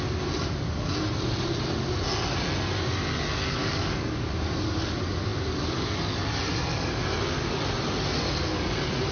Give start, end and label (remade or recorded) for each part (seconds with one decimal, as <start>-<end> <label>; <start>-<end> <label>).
0.0-3.6 recorded; 3.6-4.3 remade; 4.3-9.1 recorded